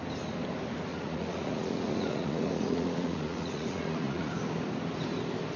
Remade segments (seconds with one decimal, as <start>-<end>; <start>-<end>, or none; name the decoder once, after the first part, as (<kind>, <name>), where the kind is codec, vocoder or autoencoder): 0.9-4.3 (vocoder, Vocos)